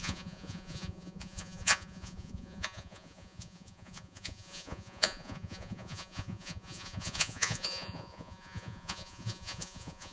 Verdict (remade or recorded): remade